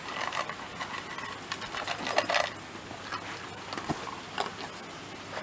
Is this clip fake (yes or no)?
no